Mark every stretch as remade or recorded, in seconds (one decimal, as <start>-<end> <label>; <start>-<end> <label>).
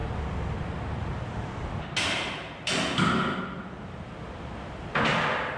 0.0-5.6 recorded